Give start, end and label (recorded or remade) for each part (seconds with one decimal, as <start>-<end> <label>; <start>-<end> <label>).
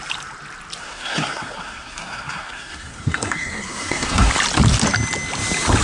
0.0-0.8 recorded; 0.8-4.3 remade; 4.3-5.8 recorded